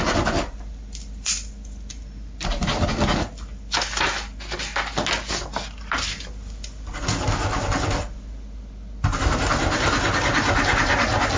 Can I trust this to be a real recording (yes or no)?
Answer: yes